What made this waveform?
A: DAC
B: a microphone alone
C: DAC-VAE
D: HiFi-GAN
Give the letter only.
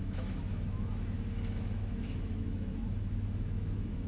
C